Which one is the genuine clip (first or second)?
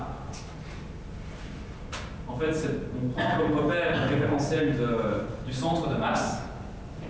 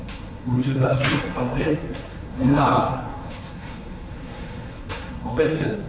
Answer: first